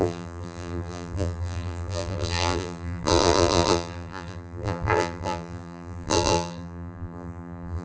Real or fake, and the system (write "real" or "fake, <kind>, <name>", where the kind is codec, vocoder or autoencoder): fake, vocoder, BigVGAN v2